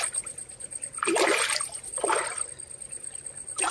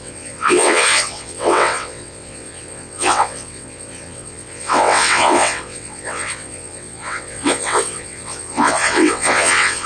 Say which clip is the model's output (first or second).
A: second